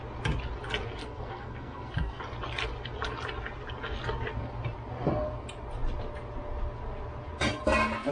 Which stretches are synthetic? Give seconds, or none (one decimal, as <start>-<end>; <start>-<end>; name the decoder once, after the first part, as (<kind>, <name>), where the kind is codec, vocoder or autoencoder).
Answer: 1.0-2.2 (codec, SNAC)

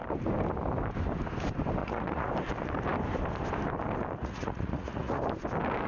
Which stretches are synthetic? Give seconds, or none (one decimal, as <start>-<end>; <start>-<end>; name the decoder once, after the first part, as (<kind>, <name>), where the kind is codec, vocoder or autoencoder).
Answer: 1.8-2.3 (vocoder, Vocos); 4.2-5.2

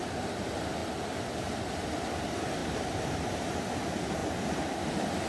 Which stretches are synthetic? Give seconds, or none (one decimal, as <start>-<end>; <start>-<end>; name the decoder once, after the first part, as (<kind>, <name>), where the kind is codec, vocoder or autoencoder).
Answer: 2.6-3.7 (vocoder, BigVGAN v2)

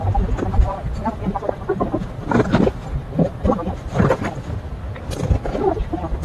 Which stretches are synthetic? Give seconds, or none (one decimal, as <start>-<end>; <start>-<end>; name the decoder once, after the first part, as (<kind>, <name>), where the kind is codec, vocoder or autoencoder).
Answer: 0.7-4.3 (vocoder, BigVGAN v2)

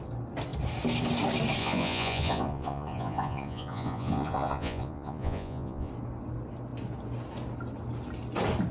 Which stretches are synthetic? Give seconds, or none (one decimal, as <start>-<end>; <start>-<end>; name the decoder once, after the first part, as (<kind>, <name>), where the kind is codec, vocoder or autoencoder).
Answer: 1.6-5.9 (vocoder, Vocos)

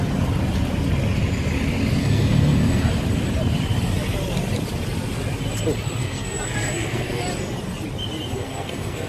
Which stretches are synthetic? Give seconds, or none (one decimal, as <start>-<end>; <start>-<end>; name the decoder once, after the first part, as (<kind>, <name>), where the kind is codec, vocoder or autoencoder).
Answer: 2.0-2.9 (codec, SNAC); 6.0-7.2; 8.3-9.1

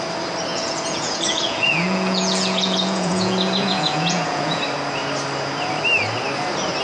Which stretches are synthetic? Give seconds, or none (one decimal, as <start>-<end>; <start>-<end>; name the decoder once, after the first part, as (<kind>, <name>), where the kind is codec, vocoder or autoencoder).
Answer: 0.5-4.6 (vocoder, Vocos)

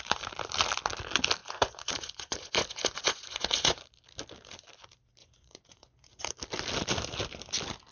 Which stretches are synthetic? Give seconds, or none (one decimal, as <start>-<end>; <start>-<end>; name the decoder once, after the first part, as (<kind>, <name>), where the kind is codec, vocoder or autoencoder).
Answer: 1.4-3.8 (vocoder, Vocos); 5.2-6.3